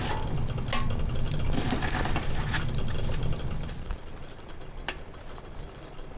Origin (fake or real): real